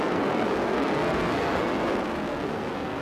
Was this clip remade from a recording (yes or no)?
yes